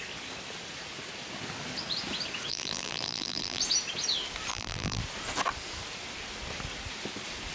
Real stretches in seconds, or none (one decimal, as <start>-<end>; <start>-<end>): 0.0-2.5; 3.6-4.5; 5.0-7.5